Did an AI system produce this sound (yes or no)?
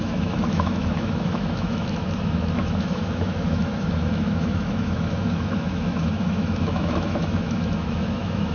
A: yes